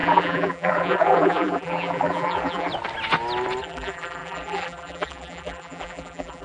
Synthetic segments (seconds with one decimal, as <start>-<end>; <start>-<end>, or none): 0.0-2.7; 3.6-6.4

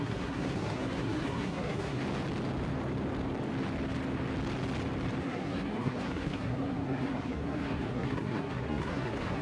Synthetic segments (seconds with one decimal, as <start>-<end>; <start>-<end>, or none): 0.0-2.0; 5.2-9.4

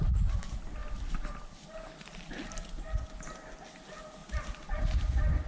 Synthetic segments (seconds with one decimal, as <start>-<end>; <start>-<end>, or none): 4.2-5.5

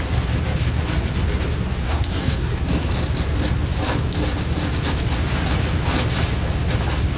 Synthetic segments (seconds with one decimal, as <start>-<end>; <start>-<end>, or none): 1.8-2.9

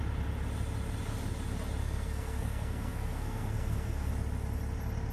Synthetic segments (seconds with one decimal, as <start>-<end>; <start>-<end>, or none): 1.8-4.1

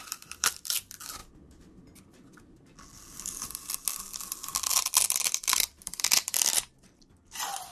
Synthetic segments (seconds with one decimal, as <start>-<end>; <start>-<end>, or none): 0.0-1.2; 4.7-7.7

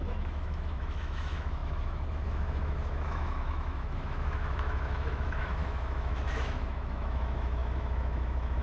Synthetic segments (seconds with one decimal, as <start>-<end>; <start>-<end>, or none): 0.0-8.6